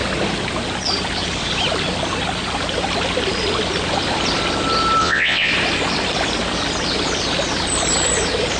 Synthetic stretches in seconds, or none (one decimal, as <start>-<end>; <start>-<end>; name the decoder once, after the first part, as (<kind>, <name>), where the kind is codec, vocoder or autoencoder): 5.0-5.5 (vocoder, WaveNeXt)